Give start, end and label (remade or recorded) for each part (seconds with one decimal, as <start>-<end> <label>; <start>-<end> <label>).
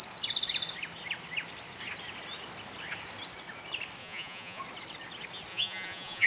0.0-4.0 recorded; 4.0-4.6 remade; 4.6-5.5 recorded; 5.5-6.3 remade